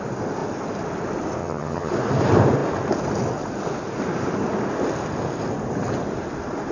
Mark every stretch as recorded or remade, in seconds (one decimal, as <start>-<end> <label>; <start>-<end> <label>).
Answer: 0.0-1.4 recorded; 1.4-1.9 remade; 1.9-6.7 recorded